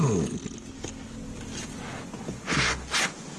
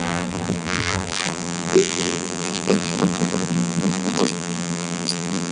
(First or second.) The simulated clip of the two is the second